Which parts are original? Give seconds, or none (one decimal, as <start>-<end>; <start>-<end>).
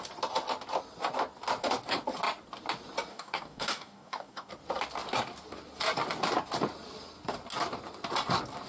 0.0-3.1; 4.5-8.7